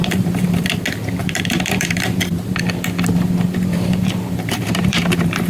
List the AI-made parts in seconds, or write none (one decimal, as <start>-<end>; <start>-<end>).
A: 0.0-0.7; 1.2-2.6; 3.7-5.5